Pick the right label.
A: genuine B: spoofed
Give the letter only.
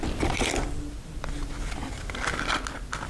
A